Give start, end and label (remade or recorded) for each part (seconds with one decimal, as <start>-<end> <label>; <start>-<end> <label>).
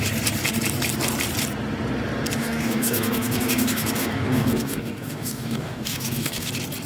0.0-2.4 recorded; 2.4-6.5 remade; 6.5-6.9 recorded